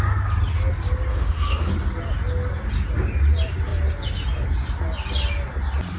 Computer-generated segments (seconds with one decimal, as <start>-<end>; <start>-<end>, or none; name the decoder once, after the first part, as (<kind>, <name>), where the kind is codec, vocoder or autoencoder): 1.1-1.7 (autoencoder, DAC-VAE)